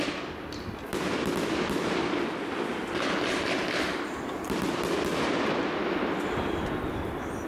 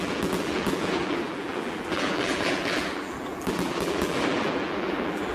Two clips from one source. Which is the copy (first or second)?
second